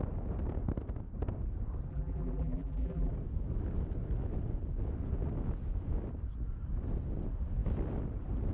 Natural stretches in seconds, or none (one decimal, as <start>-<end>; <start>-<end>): 0.0-1.9; 3.1-8.5